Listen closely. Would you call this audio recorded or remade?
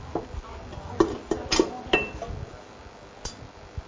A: recorded